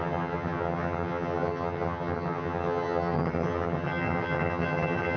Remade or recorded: remade